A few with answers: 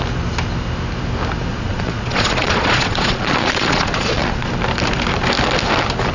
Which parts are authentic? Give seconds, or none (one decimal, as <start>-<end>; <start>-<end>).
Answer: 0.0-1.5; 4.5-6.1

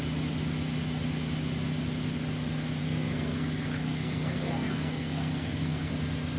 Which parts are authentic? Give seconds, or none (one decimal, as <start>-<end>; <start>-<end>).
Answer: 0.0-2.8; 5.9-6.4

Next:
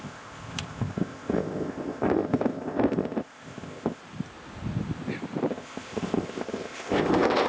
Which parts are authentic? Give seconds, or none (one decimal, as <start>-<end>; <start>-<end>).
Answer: 4.0-5.5